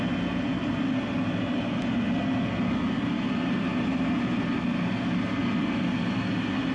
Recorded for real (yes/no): yes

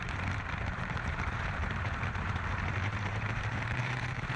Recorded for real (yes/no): no